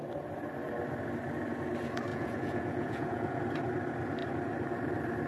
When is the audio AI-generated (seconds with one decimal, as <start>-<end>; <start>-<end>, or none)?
2.1-3.4